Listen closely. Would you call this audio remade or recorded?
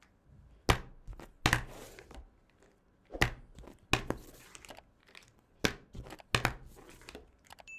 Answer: recorded